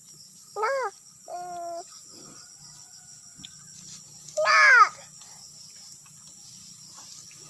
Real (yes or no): yes